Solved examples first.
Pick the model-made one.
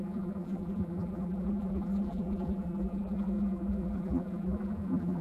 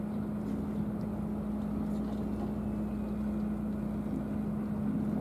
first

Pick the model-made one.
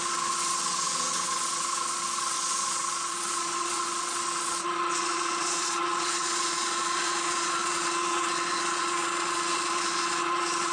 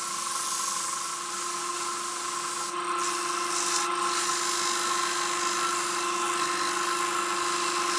first